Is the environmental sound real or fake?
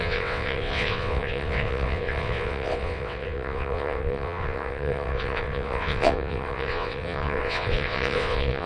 fake